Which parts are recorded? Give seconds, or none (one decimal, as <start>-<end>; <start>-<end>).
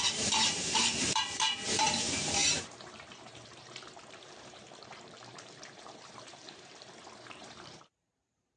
none